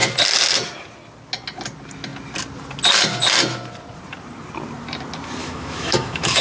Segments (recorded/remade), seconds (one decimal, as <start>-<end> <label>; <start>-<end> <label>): 0.0-5.4 recorded; 5.4-6.4 remade